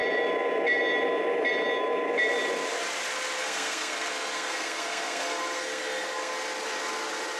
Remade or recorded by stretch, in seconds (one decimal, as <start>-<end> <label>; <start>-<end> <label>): 0.0-3.4 recorded; 3.4-6.3 remade; 6.3-7.4 recorded